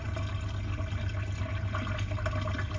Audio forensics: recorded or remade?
recorded